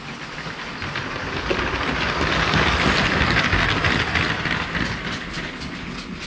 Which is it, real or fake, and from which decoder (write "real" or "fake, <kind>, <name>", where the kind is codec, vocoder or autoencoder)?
real